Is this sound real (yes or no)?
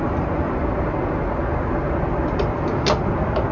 yes